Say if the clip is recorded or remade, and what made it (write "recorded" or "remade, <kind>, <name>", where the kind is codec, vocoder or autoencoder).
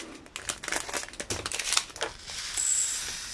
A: recorded